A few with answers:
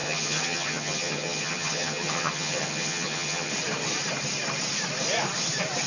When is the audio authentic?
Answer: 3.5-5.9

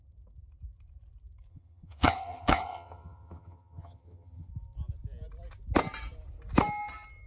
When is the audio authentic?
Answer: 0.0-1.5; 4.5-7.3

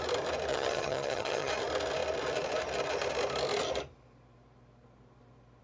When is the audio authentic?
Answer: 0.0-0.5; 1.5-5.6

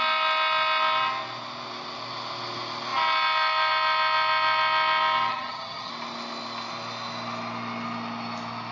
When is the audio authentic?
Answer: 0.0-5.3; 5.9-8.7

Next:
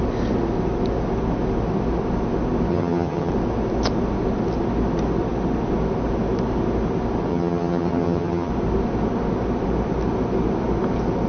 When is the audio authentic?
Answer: 0.0-2.7; 3.3-7.3; 8.5-11.3